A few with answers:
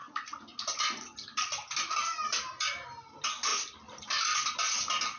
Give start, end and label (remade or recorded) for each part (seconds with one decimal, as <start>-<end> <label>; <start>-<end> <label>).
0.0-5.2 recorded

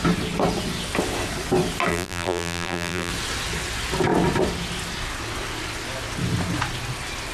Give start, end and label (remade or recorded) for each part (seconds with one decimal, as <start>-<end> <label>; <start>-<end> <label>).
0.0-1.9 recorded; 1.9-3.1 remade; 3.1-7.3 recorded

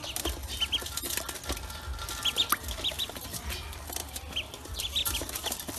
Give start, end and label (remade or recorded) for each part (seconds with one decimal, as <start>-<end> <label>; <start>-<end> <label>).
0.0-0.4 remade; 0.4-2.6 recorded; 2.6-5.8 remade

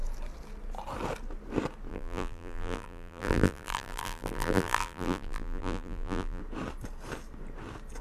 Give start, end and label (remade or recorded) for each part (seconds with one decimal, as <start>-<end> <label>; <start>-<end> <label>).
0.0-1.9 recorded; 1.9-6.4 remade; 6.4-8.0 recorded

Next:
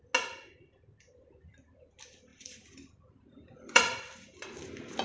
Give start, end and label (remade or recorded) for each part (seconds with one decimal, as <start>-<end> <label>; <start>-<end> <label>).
0.0-2.3 recorded; 2.3-4.4 remade; 4.4-5.0 recorded

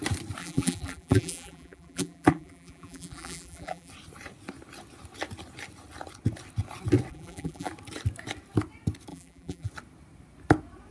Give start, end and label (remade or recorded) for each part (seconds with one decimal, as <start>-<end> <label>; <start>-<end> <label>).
0.0-0.4 recorded; 0.4-3.9 remade; 3.9-7.1 recorded; 7.1-7.7 remade; 7.7-9.1 recorded; 9.1-9.7 remade; 9.7-10.9 recorded

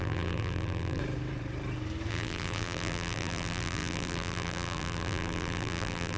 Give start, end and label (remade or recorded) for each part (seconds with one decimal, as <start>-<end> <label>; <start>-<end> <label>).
0.0-1.0 remade; 1.0-2.1 recorded; 2.1-6.2 remade

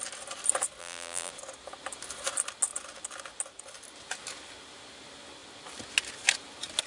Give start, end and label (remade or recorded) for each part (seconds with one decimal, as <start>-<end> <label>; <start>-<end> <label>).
0.0-0.8 recorded; 0.8-1.3 remade; 1.3-6.9 recorded